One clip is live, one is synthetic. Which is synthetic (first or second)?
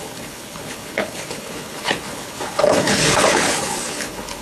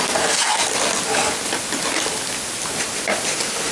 first